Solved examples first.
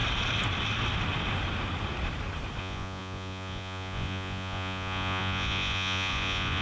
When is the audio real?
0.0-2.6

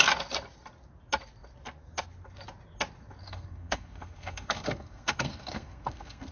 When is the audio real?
0.0-3.2